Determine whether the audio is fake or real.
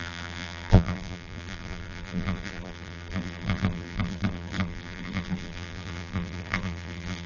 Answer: fake